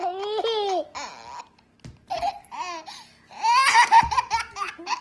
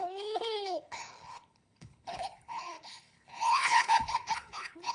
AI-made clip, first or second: second